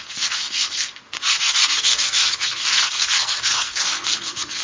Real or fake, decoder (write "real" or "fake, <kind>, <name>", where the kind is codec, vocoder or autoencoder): fake, codec, SNAC